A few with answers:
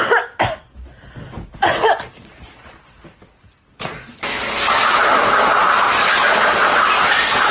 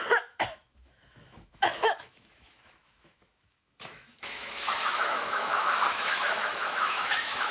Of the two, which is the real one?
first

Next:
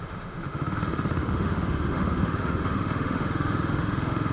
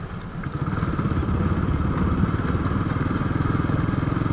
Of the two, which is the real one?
second